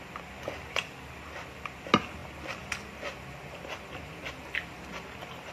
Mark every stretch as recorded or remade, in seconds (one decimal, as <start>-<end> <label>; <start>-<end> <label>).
0.0-5.5 recorded